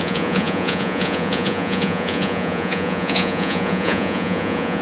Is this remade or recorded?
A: remade